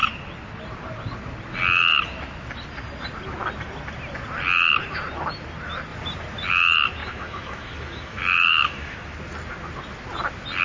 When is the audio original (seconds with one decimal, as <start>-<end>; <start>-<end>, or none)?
0.0-7.0; 9.0-10.6